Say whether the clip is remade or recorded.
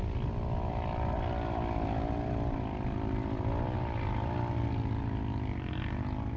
recorded